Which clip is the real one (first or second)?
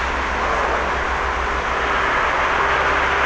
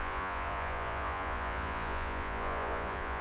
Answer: first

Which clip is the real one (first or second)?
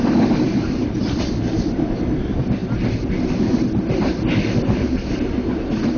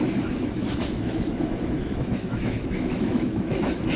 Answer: first